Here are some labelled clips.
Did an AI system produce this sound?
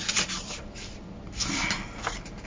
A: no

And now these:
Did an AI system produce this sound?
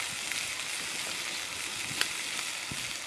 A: no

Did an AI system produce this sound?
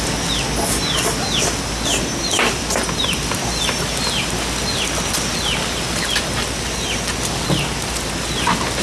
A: no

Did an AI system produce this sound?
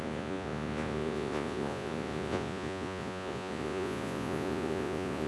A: yes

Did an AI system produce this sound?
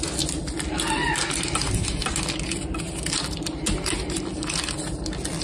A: no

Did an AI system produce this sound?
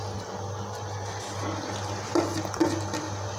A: no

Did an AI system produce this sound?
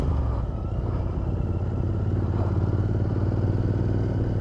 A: no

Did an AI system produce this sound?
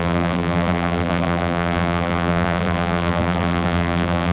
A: yes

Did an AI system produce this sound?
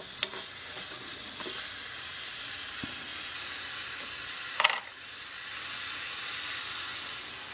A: no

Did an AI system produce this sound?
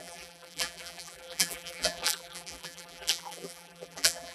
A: yes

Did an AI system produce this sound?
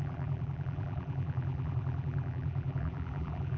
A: yes